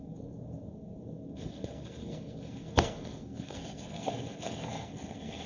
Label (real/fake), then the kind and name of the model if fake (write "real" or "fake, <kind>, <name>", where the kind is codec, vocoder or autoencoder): fake, codec, SNAC